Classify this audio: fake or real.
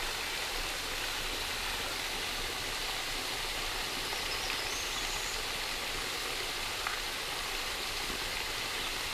real